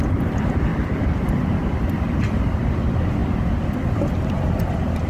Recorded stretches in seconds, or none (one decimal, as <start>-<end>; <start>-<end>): 0.0-5.1